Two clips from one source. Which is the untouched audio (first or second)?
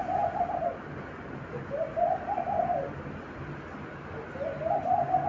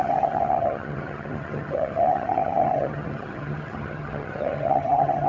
first